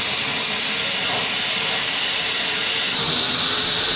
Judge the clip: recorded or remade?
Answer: recorded